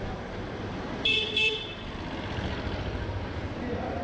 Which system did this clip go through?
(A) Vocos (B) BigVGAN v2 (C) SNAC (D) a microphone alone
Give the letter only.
B